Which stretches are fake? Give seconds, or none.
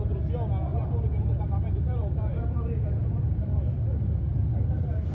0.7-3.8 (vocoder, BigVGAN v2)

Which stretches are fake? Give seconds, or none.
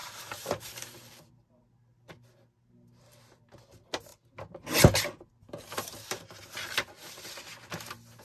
0.0-1.3 (vocoder, BigVGAN v2)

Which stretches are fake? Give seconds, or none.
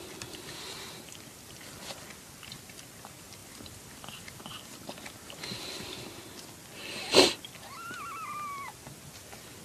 none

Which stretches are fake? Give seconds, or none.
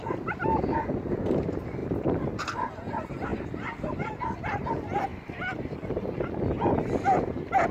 1.8-2.4 (vocoder, BigVGAN v2); 5.1-5.9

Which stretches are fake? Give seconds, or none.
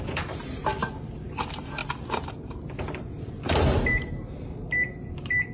0.0-5.5 (vocoder, BigVGAN v2)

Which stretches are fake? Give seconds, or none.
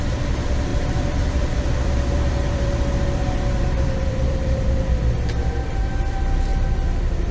0.7-4.9 (vocoder, BigVGAN v2)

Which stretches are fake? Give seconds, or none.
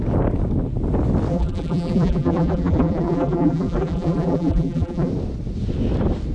1.3-5.1 (vocoder, BigVGAN v2)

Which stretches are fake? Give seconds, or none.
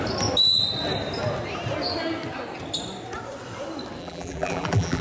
4.0-5.0 (vocoder, BigVGAN v2)